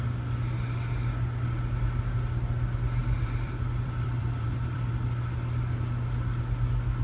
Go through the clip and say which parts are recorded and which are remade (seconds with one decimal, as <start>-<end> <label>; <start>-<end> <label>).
0.0-3.0 recorded; 3.0-4.9 remade; 4.9-7.0 recorded